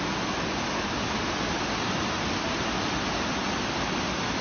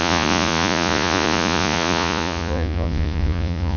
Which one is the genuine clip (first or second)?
first